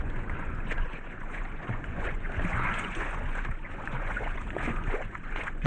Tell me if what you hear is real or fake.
fake